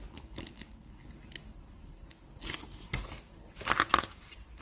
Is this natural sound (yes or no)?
yes